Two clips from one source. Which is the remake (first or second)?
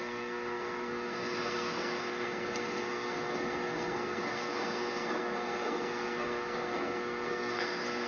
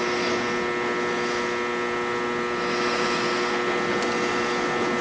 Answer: first